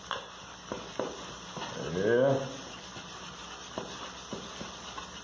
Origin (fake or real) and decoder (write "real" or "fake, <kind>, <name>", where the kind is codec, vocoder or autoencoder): real